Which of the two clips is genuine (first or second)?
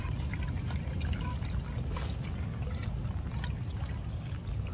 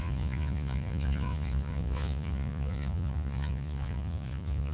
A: first